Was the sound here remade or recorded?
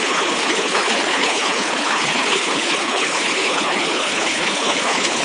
remade